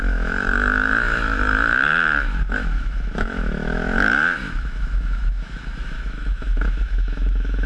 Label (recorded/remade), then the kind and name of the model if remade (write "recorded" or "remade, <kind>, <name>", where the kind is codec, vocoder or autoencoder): remade, autoencoder, DAC-VAE